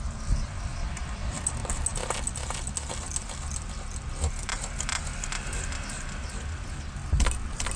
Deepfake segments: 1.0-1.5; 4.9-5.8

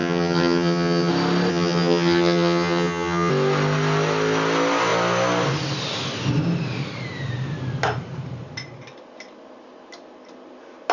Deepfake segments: 0.0-1.1; 1.5-3.3

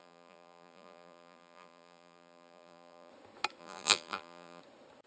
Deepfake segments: 0.0-3.1; 3.6-4.6